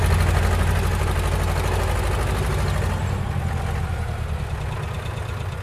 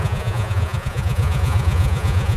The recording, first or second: first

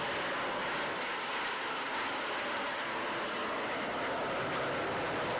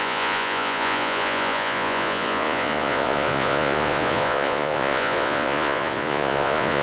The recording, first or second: first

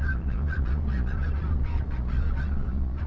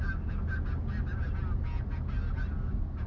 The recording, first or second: second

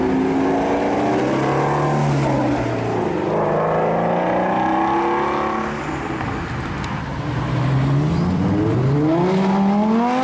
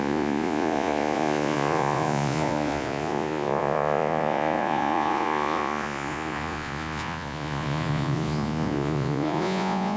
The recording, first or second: first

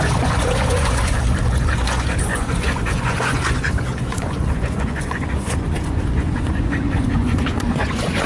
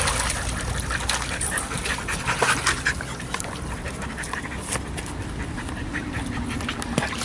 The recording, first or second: second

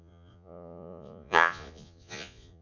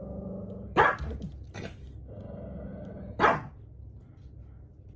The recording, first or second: second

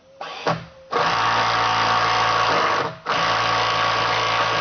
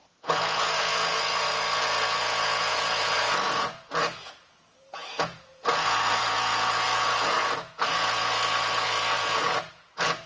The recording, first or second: first